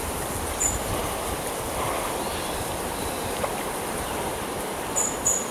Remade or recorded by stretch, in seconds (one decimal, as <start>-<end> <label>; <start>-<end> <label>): 0.0-5.5 recorded